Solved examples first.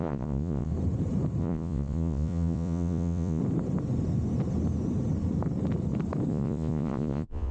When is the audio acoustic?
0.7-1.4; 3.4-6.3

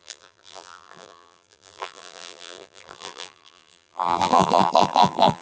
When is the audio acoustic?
none

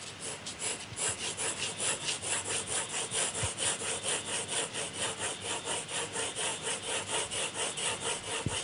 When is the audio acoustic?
0.0-6.5

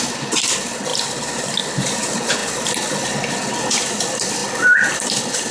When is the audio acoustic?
0.0-5.5

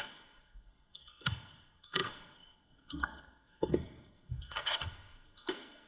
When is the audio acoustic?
none